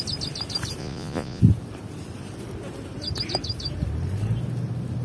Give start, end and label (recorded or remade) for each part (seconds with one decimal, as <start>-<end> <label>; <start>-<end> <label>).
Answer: 0.0-0.8 recorded; 0.8-1.4 remade; 1.4-5.0 recorded